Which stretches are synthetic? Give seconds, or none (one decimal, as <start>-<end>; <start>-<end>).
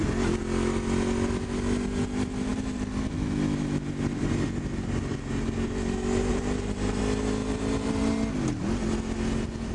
2.5-3.1; 6.3-7.0; 7.4-8.1